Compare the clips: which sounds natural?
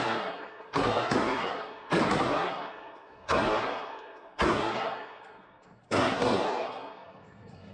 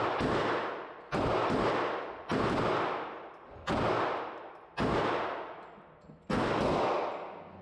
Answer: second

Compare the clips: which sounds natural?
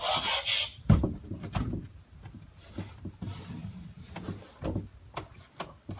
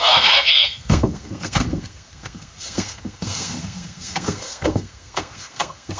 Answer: first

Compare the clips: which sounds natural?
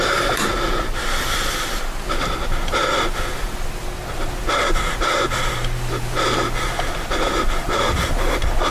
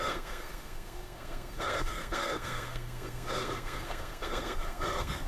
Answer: first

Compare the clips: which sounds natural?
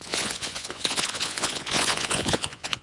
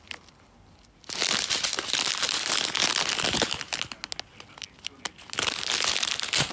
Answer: second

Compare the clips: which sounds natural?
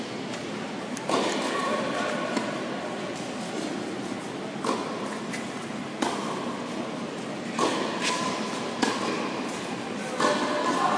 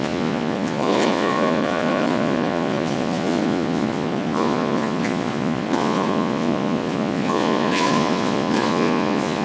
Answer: first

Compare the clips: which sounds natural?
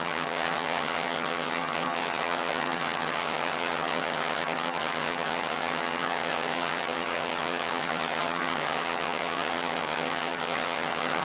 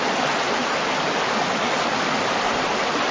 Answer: second